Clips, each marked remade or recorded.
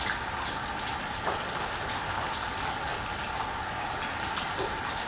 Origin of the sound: recorded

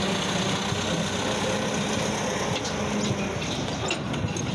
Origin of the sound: recorded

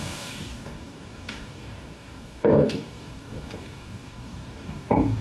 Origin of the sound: remade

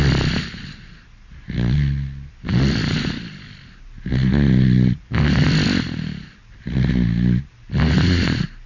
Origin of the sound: recorded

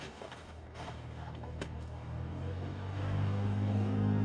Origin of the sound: remade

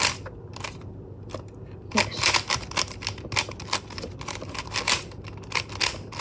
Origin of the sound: recorded